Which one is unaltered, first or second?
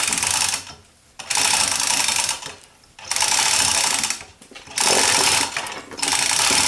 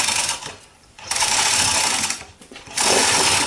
first